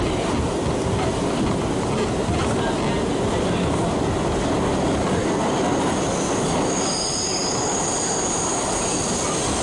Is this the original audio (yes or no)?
yes